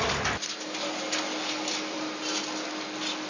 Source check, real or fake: real